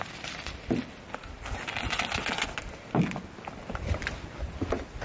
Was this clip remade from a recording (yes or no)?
no